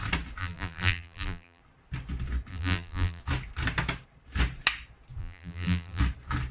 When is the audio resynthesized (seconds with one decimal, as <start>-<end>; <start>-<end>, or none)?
0.4-1.6; 2.5-3.2; 5.2-6.0